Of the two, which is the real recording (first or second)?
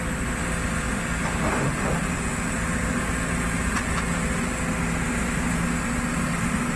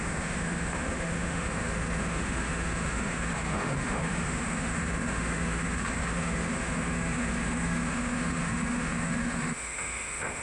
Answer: first